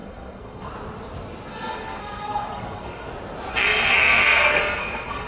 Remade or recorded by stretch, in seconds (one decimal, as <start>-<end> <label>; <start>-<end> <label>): 0.0-0.7 remade; 0.7-1.5 recorded; 1.5-3.1 remade; 3.1-3.5 recorded; 3.5-5.3 remade